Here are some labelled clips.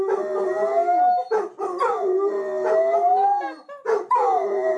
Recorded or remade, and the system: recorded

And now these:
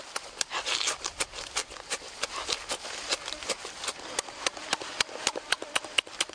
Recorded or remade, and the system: recorded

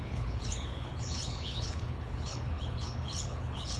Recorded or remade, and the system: remade, codec, HILCodec